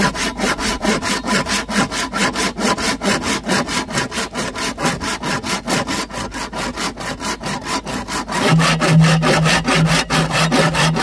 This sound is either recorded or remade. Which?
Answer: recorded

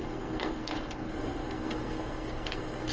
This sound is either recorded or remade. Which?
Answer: remade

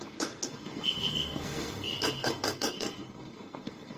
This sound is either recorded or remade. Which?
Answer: remade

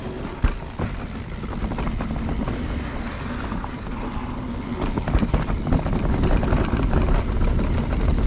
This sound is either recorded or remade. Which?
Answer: recorded